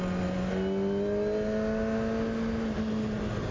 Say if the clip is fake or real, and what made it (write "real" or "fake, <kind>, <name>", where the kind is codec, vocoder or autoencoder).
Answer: real